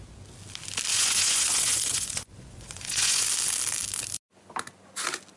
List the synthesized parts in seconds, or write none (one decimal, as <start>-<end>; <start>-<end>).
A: 0.9-3.2